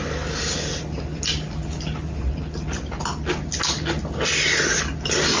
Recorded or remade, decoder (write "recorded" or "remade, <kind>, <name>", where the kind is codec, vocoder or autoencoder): recorded